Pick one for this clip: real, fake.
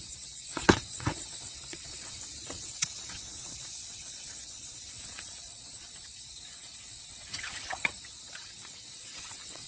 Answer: fake